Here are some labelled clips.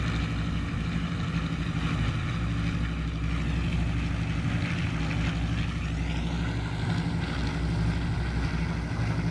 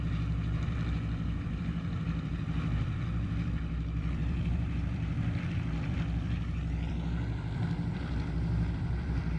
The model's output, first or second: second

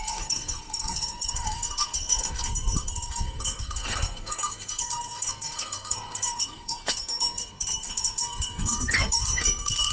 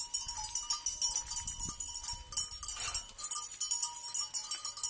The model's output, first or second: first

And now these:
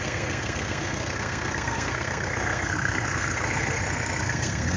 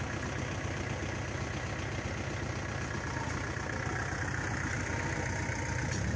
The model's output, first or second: first